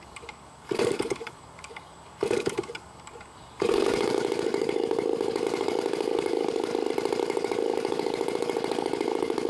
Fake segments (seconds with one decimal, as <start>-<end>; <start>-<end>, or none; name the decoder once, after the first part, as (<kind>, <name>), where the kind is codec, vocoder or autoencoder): 0.0-6.7 (codec, DAC); 7.2-9.5